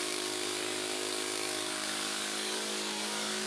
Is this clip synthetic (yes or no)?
yes